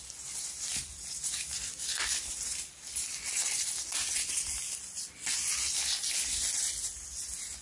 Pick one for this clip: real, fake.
real